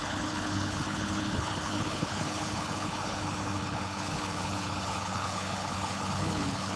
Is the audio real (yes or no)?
no